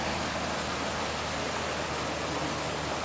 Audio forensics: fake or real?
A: real